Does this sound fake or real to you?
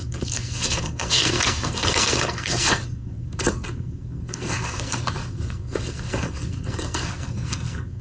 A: fake